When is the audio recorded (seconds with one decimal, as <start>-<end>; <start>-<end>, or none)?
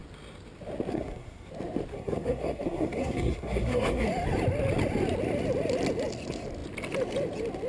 0.0-0.9; 1.5-1.9; 4.1-7.7